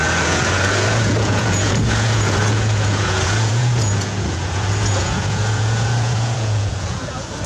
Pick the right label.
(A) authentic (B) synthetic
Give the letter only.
B